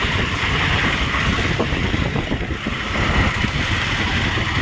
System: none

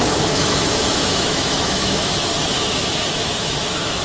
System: autoencoder, DAC-VAE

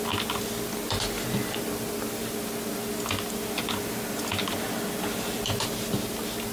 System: none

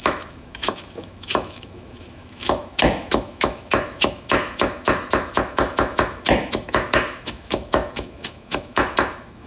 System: autoencoder, DAC-VAE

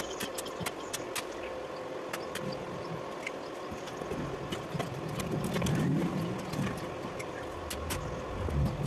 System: none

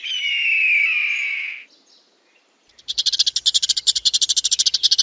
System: none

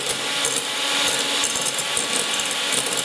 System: none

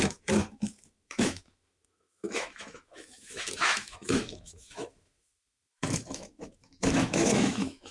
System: autoencoder, DAC-VAE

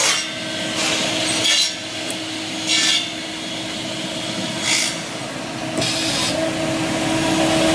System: none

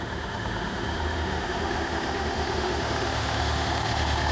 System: autoencoder, DAC-VAE